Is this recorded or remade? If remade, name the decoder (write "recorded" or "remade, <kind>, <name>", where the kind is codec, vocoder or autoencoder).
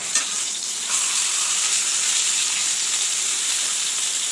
remade, vocoder, BigVGAN v2